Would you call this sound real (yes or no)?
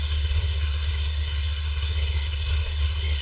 no